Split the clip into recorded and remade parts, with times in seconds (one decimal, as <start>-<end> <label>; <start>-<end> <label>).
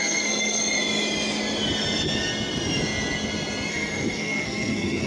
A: 0.0-0.6 remade; 0.6-3.7 recorded; 3.7-5.1 remade